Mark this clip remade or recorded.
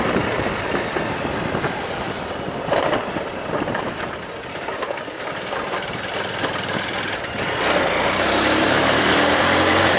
remade